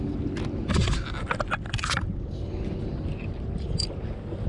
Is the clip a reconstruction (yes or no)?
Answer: no